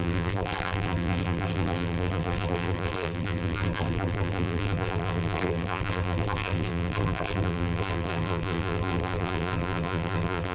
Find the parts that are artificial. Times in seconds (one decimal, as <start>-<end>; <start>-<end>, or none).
0.0-10.5